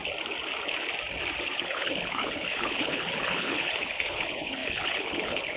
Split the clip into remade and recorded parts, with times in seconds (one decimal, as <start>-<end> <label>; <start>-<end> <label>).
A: 0.0-1.6 recorded; 1.6-5.6 remade